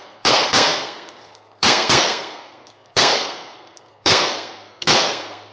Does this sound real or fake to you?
fake